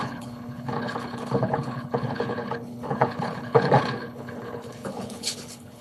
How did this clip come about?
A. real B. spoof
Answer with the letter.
B